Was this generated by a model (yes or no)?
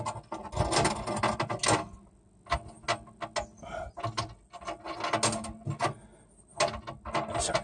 no